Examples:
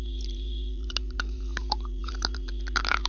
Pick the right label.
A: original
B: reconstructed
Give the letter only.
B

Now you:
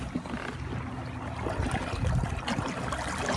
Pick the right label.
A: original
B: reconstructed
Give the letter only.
A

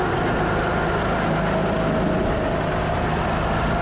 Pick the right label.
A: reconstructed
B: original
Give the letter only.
B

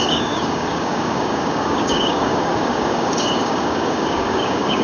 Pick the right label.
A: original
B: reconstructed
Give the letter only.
B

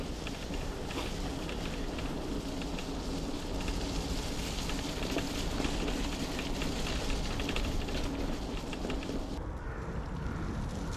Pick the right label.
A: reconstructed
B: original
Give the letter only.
B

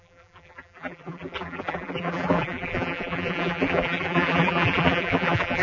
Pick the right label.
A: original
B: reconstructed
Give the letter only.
B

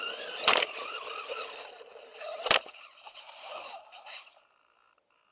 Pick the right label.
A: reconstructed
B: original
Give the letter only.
A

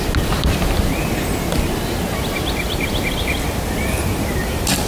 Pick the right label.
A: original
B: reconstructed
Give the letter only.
A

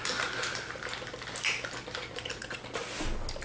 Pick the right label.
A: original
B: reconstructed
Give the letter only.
A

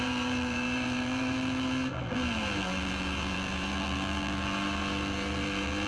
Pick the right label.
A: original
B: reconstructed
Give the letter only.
B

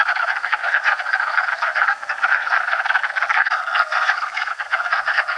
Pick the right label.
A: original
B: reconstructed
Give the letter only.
B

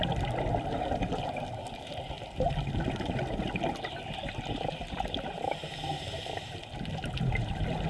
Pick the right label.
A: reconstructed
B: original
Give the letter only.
B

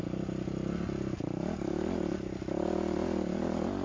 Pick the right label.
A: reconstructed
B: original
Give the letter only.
B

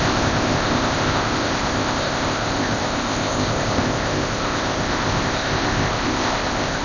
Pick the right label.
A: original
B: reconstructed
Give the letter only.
B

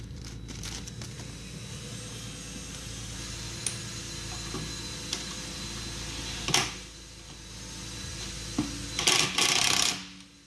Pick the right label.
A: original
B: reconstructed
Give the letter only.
A